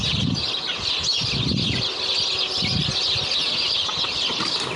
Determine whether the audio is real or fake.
real